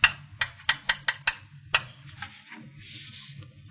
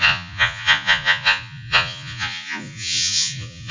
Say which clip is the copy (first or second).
second